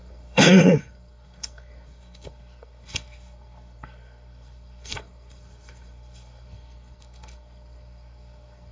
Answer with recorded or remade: remade